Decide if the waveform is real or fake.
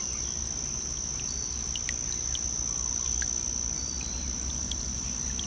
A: real